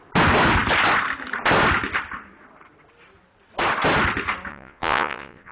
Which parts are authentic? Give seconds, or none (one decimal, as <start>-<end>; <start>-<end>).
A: 0.0-4.5